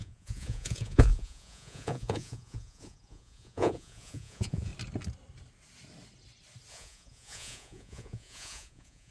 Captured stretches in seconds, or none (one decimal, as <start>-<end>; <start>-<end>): 4.7-6.7